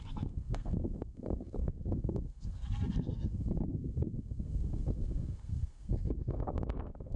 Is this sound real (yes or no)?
no